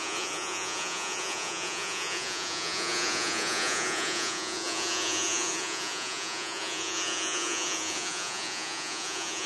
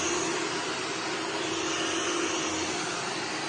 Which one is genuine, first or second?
second